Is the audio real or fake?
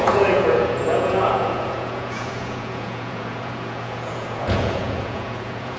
fake